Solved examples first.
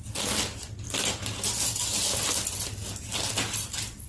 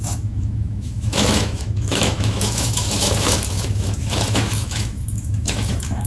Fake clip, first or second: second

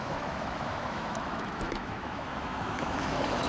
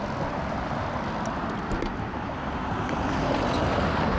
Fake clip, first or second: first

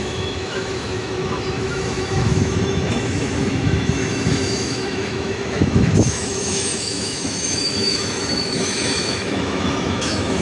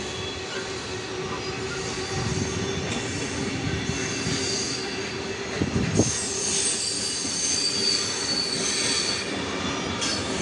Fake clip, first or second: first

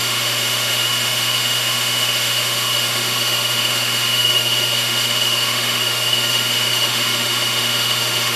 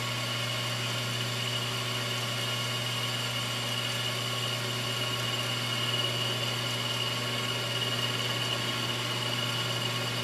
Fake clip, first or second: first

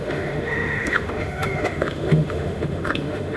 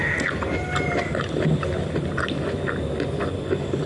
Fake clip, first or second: first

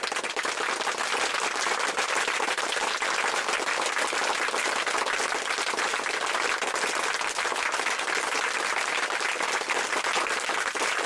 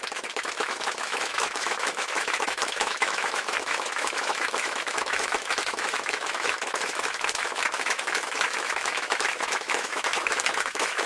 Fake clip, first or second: second